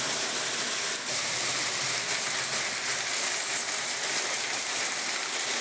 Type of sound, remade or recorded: recorded